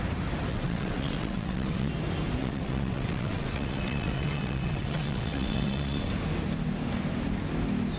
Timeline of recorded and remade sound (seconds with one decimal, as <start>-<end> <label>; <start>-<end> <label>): 0.0-0.5 recorded; 0.5-1.9 remade; 1.9-2.4 recorded; 2.4-6.1 remade; 6.1-8.0 recorded